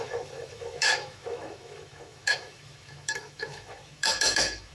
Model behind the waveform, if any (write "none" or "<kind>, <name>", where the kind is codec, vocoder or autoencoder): autoencoder, DAC-VAE